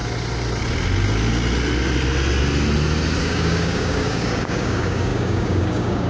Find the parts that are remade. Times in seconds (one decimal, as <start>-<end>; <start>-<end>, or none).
3.2-6.1